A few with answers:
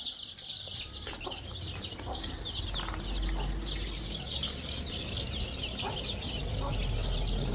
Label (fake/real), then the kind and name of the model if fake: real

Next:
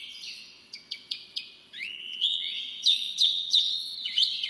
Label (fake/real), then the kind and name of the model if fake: fake, vocoder, WaveNeXt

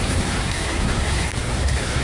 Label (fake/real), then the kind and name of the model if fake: fake, codec, SNAC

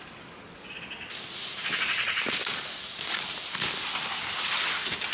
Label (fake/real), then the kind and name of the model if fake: real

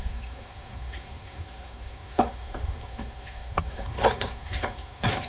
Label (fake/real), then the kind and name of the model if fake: fake, codec, SNAC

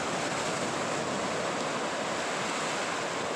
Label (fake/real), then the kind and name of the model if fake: real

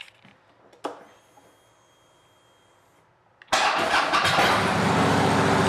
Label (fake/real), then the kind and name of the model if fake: real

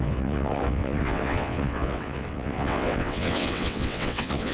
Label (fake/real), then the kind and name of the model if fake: fake, vocoder, WaveNeXt